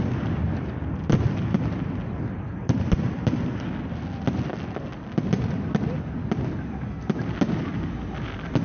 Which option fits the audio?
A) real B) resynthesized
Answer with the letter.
A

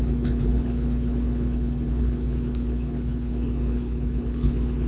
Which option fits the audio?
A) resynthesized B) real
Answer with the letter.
A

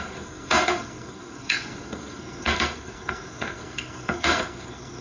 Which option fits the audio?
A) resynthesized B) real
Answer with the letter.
A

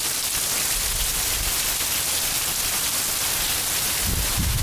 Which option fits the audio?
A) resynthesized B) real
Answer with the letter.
B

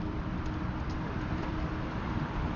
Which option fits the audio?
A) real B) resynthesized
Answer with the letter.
B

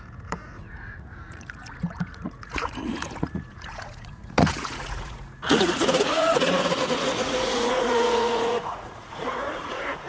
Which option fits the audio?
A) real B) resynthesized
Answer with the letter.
B